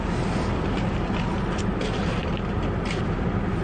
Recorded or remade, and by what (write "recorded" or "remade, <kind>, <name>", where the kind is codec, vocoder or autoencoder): recorded